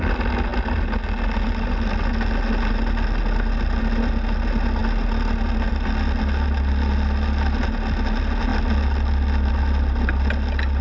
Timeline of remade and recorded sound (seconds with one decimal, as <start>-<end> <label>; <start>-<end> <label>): 0.0-10.8 recorded